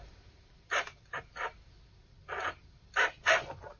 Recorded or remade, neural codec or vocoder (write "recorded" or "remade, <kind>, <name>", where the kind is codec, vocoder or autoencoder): recorded